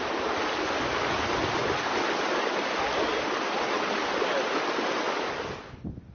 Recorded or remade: recorded